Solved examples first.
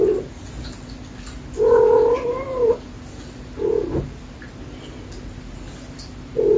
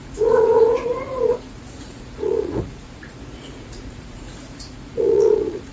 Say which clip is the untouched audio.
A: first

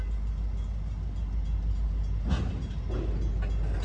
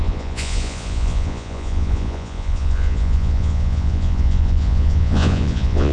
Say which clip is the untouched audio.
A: first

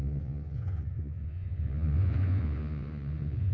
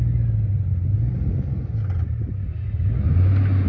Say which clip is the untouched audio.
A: second